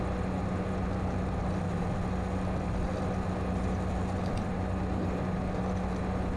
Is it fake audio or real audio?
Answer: fake